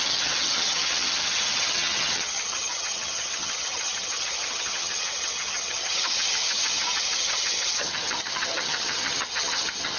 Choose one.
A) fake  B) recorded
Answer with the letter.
A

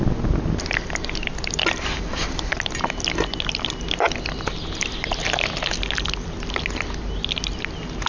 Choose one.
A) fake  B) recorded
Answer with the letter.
B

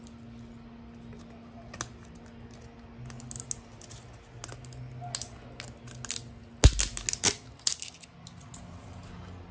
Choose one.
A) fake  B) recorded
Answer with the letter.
B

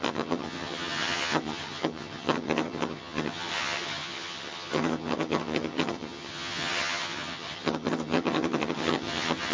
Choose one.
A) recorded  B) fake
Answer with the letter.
B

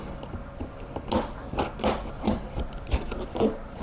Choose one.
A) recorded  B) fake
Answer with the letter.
A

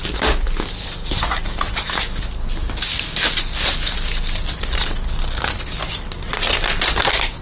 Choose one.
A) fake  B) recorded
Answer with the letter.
B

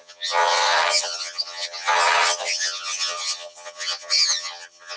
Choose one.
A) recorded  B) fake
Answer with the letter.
B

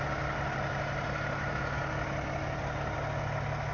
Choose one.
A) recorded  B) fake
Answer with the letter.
A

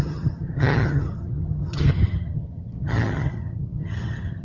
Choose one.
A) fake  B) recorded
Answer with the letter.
A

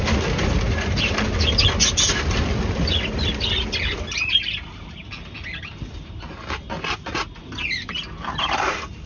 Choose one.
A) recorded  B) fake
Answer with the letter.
A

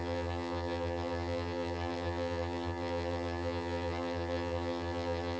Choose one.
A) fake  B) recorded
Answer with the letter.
A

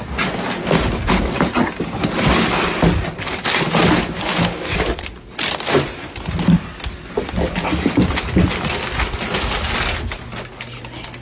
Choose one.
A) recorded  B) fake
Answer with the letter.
A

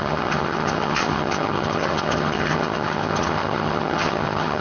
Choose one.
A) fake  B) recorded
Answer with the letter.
A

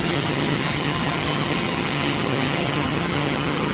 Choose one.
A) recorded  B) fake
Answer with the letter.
B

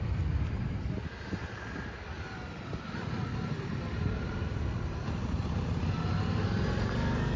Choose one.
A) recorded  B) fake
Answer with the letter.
A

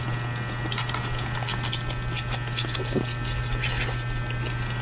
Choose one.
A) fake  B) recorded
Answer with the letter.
B